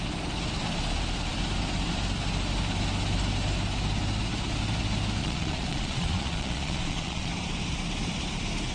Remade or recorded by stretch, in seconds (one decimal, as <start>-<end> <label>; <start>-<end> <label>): 0.0-5.2 recorded; 5.2-7.3 remade; 7.3-8.7 recorded